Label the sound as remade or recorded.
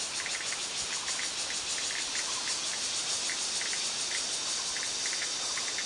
recorded